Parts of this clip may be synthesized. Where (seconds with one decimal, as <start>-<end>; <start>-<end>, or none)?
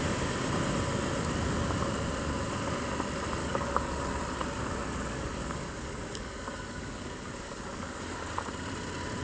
3.4-4.2; 4.8-8.2